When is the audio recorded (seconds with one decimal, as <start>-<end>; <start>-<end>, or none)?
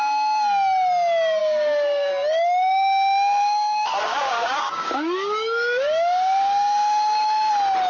0.0-1.4; 2.1-3.4; 7.5-7.9